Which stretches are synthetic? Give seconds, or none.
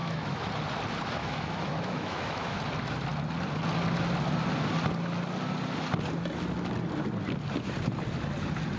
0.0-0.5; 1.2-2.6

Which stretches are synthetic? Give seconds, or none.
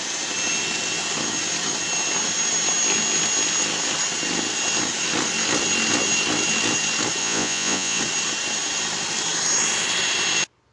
7.2-8.0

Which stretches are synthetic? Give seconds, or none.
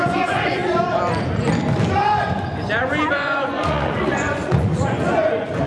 0.0-0.6; 3.1-5.7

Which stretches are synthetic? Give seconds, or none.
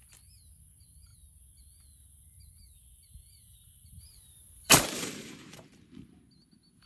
3.2-6.2